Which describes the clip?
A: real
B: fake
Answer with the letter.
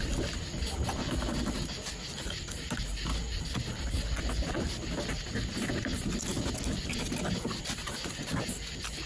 A